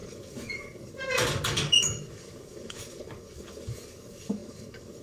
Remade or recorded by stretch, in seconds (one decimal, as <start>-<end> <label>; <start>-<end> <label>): 0.0-5.0 remade